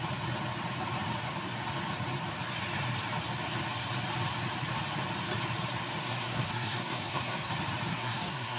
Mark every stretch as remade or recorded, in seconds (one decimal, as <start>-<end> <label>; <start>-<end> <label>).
0.0-6.0 recorded; 6.0-7.5 remade; 7.5-7.9 recorded; 7.9-8.6 remade